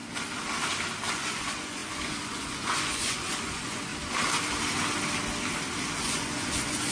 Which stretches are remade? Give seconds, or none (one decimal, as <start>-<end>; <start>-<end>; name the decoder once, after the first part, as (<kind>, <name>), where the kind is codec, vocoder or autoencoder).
1.1-3.9 (vocoder, Vocos); 6.0-6.9